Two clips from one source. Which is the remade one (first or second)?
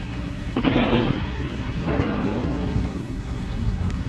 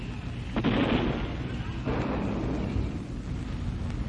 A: first